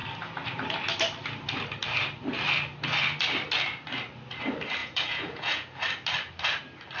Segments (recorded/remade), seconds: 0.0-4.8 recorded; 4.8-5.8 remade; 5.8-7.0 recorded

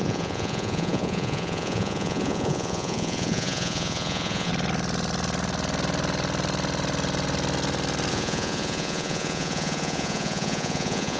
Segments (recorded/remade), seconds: 0.0-4.5 remade; 4.5-8.1 recorded; 8.1-11.2 remade

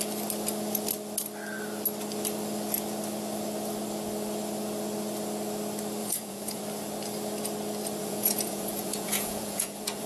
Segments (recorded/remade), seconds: 0.0-6.0 recorded; 6.0-6.6 remade; 6.6-8.0 recorded; 8.0-10.1 remade

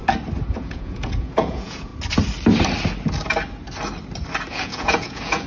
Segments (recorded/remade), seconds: 0.0-0.5 recorded; 0.5-1.9 remade; 1.9-4.5 recorded; 4.5-5.5 remade

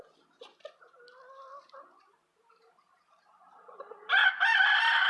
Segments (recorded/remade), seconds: 0.0-5.1 recorded